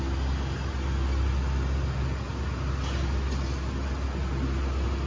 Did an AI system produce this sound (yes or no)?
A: no